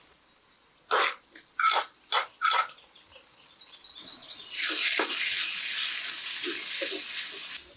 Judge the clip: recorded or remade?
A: recorded